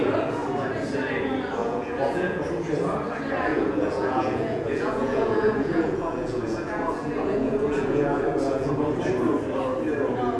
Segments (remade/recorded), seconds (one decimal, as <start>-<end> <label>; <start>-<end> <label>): 0.0-1.6 recorded; 1.6-2.4 remade; 2.4-3.5 recorded; 3.5-8.7 remade; 8.7-10.4 recorded